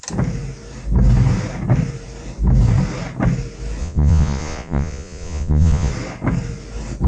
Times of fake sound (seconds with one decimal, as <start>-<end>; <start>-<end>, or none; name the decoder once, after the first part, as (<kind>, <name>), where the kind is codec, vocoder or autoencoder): 3.8-5.9 (vocoder, Vocos)